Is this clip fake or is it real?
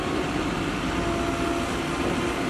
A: real